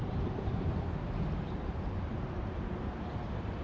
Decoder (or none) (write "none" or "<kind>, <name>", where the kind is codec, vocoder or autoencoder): vocoder, BigVGAN v2